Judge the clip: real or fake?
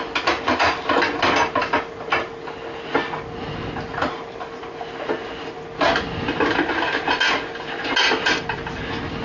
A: real